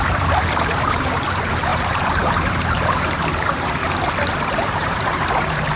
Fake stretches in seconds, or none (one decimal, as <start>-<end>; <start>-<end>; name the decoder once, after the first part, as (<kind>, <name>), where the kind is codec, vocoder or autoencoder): 0.0-3.8 (vocoder, BigVGAN v2); 4.4-5.8